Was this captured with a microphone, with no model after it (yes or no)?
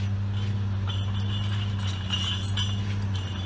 yes